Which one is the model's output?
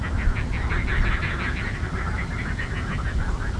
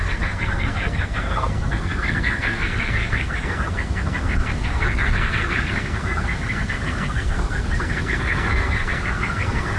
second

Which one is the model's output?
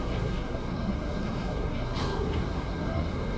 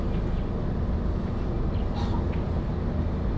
first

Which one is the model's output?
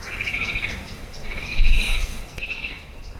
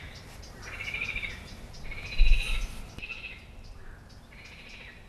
first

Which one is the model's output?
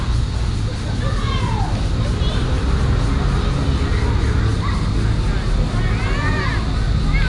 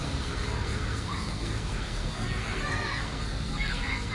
second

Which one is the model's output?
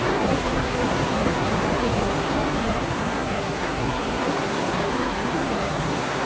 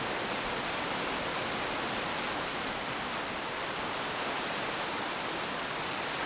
first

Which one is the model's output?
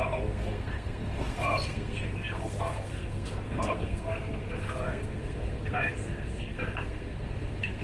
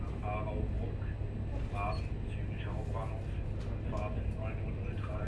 first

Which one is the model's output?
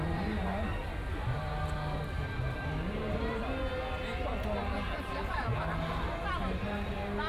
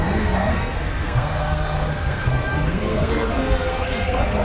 second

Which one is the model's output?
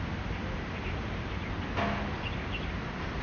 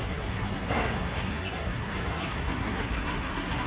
second